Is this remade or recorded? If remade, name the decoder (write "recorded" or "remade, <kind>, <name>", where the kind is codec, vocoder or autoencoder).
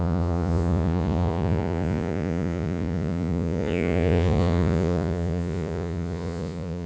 remade, vocoder, Vocos